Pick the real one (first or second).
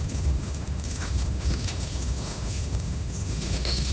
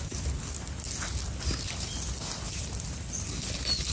second